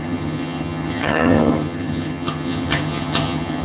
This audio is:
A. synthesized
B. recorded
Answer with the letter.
A